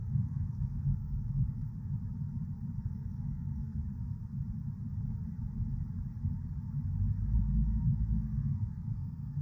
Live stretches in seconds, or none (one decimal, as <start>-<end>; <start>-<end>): 1.7-2.8; 3.8-7.4

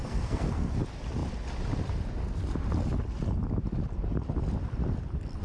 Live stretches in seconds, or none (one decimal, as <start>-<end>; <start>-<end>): 0.7-5.4

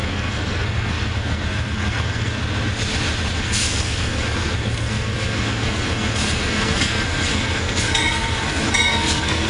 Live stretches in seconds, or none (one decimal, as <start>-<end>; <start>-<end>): 2.4-3.4